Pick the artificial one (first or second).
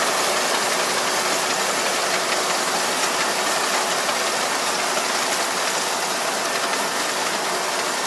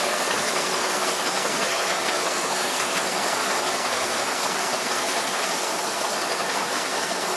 second